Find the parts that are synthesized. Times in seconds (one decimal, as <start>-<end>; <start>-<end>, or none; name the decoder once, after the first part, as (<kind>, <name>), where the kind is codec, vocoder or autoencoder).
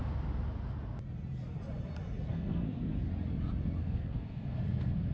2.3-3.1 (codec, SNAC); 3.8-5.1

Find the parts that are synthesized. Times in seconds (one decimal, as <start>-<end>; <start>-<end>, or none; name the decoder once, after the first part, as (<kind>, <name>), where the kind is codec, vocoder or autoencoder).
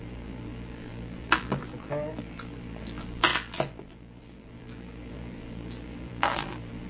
0.0-6.9 (vocoder, BigVGAN v2)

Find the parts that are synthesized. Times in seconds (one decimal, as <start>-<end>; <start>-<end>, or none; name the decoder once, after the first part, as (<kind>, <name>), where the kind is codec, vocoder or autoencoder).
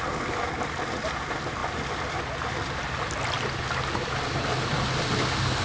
none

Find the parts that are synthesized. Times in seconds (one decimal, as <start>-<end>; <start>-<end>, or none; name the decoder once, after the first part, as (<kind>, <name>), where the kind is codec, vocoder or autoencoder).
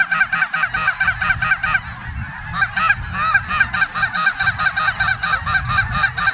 none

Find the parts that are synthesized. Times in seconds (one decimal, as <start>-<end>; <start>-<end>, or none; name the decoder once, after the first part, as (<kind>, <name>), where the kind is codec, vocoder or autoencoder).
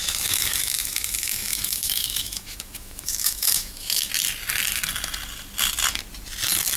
0.0-4.1 (autoencoder, DAC-VAE)